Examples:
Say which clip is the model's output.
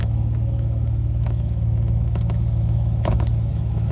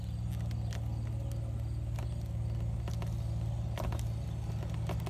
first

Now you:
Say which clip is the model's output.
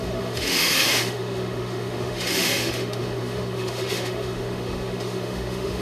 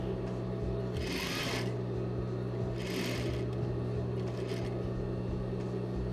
first